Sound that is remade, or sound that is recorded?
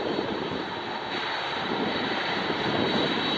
recorded